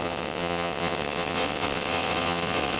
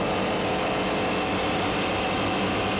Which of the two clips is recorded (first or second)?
second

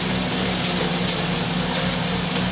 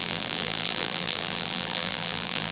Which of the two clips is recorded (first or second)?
first